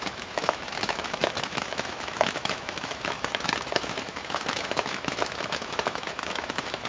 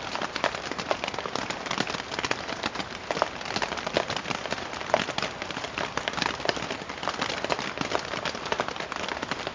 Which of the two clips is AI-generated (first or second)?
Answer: first